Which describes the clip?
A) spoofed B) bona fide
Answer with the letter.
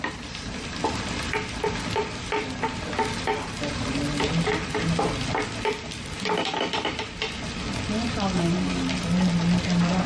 B